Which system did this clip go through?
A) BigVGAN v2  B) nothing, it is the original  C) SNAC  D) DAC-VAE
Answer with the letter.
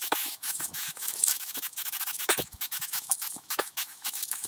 D